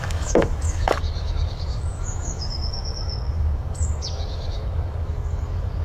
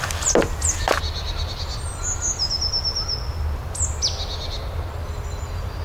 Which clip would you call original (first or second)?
second